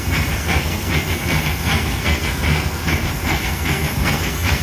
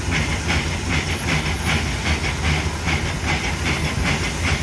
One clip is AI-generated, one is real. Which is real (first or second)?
second